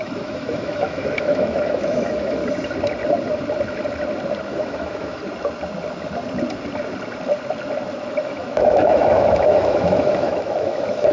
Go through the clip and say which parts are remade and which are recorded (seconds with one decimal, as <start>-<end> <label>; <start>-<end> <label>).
0.0-2.4 remade; 2.4-4.4 recorded; 4.4-5.2 remade; 5.2-8.1 recorded; 8.1-11.1 remade